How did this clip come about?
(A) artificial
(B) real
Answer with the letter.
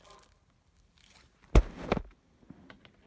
B